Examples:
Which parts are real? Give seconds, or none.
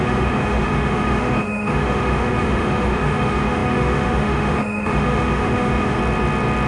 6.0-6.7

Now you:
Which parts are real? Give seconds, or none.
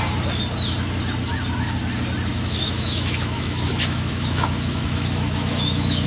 0.0-2.3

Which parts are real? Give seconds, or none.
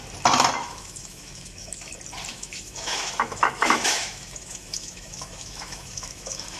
0.0-0.6; 1.9-2.3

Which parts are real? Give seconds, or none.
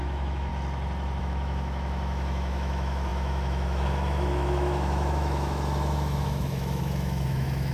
0.5-1.2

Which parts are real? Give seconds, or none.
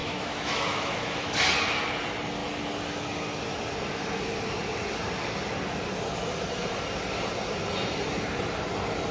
1.3-9.1